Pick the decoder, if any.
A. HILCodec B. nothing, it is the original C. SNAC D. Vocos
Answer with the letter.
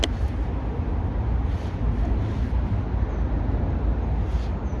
B